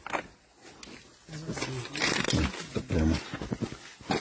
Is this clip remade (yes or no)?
no